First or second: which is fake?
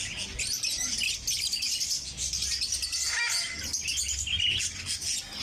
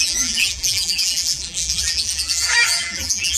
second